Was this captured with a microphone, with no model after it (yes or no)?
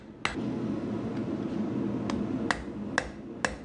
yes